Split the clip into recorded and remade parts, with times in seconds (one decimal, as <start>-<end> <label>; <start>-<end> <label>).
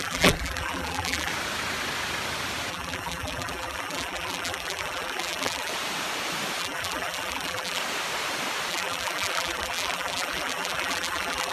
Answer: 0.0-1.3 remade; 1.3-2.7 recorded; 2.7-5.7 remade; 5.7-6.6 recorded; 6.6-7.8 remade; 7.8-8.7 recorded; 8.7-11.5 remade